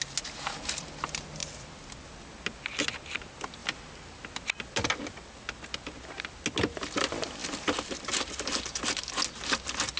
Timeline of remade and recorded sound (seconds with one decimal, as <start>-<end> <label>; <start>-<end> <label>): 0.0-1.4 recorded; 1.4-2.0 remade; 2.0-7.4 recorded; 7.4-8.9 remade; 8.9-10.0 recorded